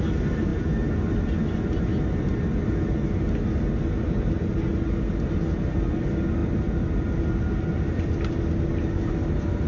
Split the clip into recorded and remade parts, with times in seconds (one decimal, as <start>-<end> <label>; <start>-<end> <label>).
0.0-9.7 recorded